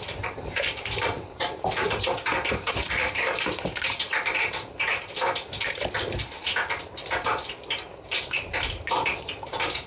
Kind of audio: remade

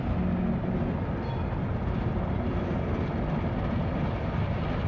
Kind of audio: recorded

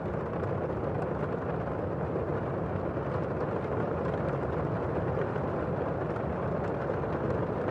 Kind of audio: recorded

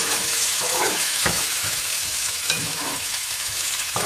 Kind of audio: remade